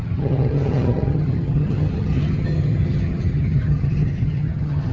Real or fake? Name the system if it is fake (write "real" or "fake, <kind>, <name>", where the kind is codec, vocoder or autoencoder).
fake, vocoder, HiFi-GAN